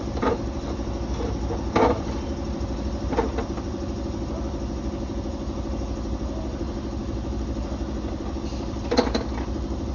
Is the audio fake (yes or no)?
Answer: no